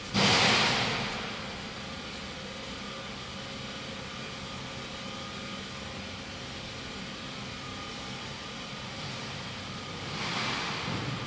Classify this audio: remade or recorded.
recorded